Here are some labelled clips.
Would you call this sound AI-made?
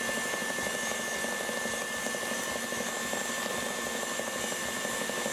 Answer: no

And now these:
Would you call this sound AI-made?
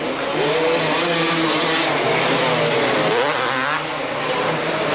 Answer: no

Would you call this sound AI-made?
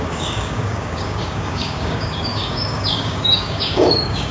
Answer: yes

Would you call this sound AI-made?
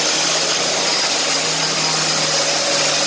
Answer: no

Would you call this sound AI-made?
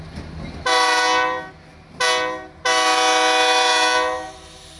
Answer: no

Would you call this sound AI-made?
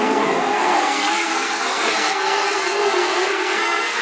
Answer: yes